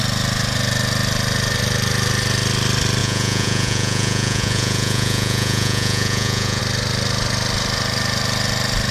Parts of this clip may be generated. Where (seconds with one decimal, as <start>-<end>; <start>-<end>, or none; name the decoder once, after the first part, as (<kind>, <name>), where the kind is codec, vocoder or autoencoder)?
3.0-6.6 (vocoder, Vocos)